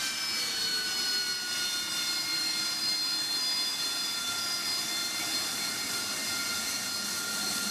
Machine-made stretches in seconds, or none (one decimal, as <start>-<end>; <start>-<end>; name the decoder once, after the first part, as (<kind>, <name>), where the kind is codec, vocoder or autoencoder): none